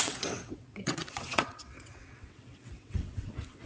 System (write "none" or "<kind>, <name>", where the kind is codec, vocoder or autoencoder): vocoder, WaveNeXt